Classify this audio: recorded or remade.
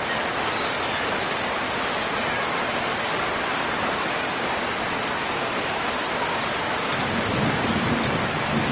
recorded